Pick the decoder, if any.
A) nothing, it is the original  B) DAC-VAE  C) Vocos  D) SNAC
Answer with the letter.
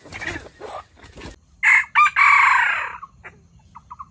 A